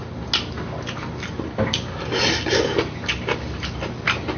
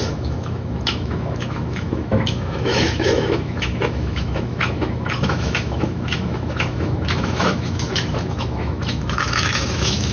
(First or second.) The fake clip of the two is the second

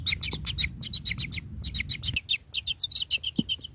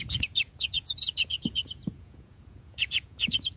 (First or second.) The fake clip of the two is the second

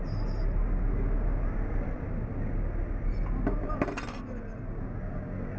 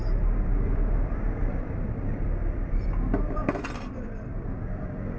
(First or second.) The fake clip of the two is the second